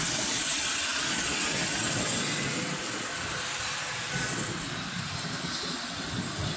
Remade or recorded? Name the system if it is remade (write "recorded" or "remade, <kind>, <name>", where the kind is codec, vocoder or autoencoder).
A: recorded